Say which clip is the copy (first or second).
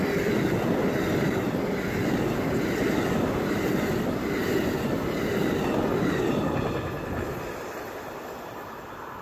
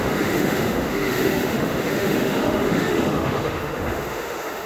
second